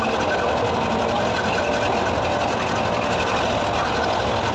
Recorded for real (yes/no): yes